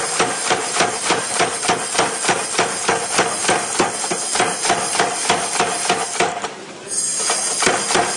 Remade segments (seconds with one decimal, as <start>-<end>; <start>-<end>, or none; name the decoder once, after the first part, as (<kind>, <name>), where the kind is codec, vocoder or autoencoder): 0.4-1.5 (vocoder, BigVGAN v2)